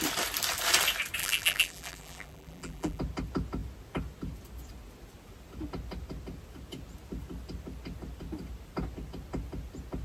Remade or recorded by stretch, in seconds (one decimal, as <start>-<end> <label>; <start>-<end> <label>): 0.0-1.2 recorded; 1.2-3.0 remade; 3.0-10.0 recorded